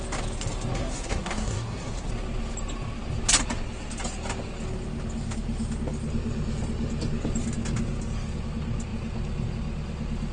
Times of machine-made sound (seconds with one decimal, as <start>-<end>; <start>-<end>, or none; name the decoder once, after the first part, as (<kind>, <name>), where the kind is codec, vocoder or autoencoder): 0.7-2.1 (codec, SNAC)